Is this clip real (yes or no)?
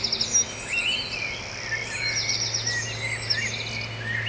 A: yes